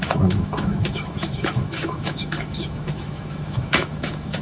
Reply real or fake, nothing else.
fake